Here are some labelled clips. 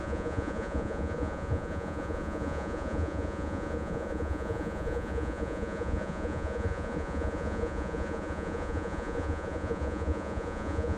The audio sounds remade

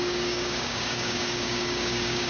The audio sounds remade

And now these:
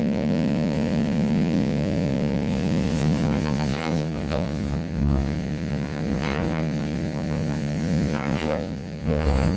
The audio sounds remade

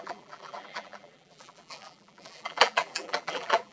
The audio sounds remade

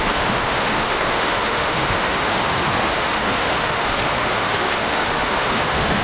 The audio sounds remade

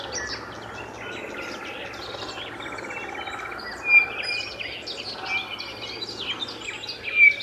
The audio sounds recorded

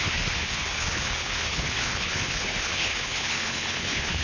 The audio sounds remade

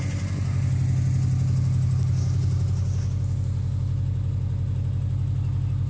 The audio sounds recorded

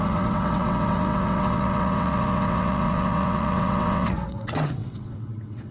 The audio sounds remade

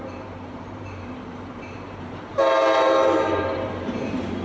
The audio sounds remade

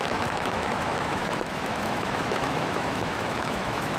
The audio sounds remade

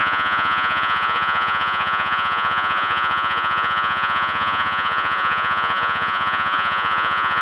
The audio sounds remade